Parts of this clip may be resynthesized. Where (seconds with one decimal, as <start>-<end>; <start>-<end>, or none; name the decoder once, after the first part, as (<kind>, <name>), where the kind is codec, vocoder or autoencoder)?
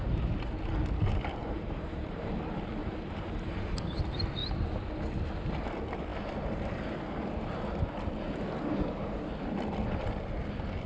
1.4-2.4 (vocoder, BigVGAN v2); 2.8-3.8; 4.4-4.9